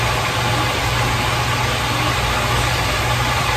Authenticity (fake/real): real